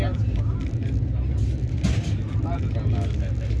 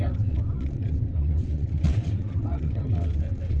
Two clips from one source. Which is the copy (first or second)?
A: second